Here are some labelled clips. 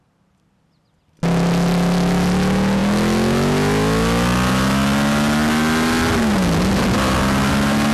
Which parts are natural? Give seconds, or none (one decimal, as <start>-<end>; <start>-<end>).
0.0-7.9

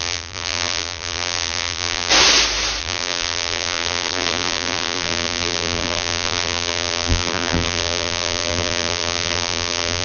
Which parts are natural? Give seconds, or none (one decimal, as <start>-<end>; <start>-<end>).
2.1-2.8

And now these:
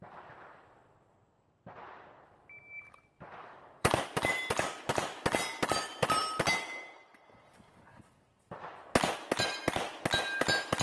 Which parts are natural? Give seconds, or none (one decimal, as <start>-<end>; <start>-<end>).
0.0-3.4; 4.2-7.9; 8.7-10.8

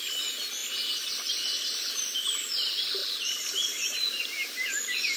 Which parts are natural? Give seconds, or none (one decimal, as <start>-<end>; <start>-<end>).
0.0-0.6; 1.9-3.0; 3.5-5.2

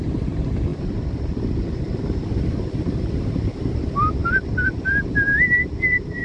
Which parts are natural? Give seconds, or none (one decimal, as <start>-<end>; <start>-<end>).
0.0-0.7; 3.4-4.2